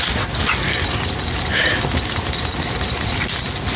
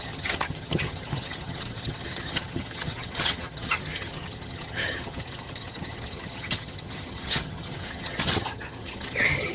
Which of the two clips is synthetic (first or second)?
second